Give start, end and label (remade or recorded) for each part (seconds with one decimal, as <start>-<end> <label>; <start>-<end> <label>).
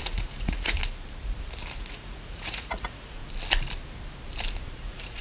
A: 0.0-0.8 remade; 0.8-1.8 recorded; 1.8-3.2 remade; 3.2-4.6 recorded; 4.6-5.2 remade